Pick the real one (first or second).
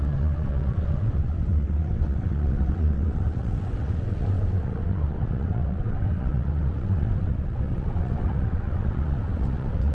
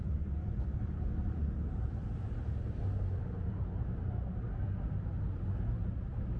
second